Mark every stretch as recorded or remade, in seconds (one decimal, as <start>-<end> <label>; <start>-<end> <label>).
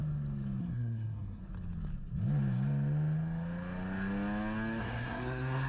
0.0-0.6 recorded; 0.6-1.4 remade; 1.4-4.8 recorded; 4.8-5.7 remade